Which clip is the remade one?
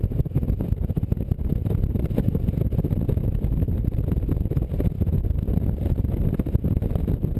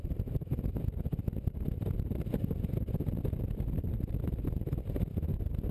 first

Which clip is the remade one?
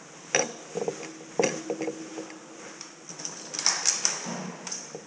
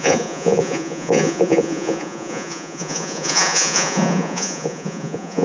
second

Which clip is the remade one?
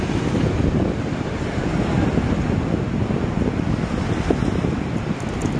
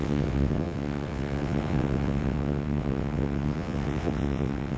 second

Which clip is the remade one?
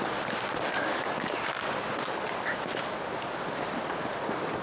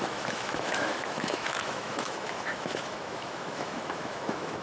second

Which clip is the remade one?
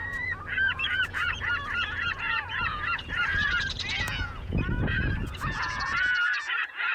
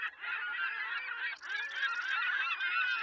first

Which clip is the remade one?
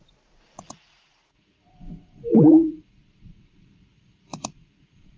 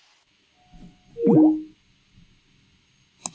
first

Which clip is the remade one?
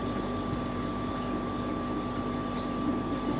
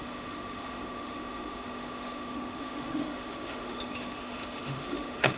second